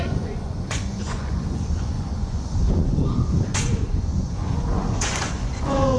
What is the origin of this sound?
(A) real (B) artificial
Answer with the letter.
B